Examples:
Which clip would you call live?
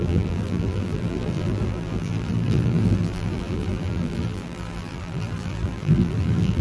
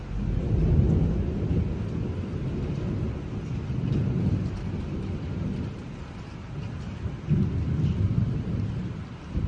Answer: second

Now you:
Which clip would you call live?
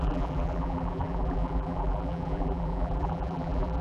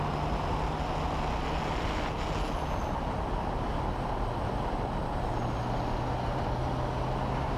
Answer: second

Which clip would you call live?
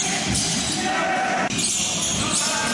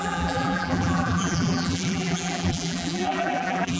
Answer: first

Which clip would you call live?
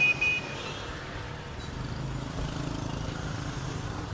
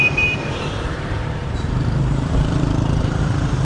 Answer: first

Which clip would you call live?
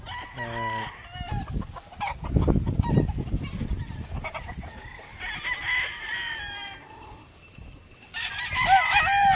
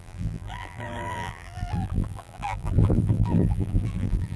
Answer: first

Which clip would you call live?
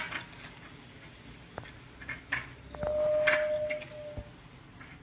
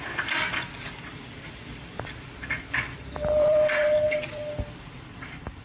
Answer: first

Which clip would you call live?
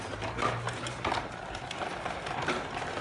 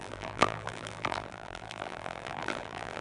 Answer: first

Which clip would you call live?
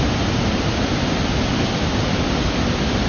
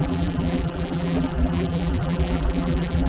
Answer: first